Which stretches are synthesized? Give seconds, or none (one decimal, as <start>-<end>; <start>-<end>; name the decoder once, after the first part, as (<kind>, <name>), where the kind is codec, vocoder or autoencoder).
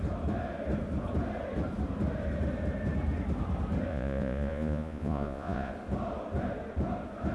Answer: 3.9-5.7 (vocoder, Vocos)